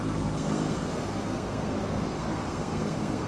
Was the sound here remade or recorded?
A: remade